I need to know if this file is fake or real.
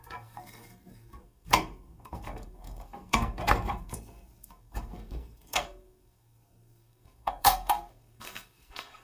fake